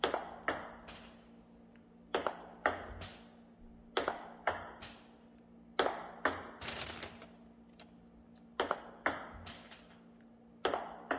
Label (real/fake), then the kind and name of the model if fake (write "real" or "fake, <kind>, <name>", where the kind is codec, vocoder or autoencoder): real